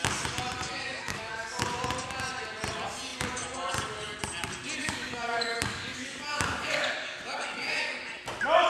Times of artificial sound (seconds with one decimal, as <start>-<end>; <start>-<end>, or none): 0.7-1.6; 4.8-8.0